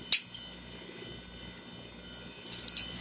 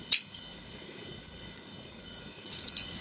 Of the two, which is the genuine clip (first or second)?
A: first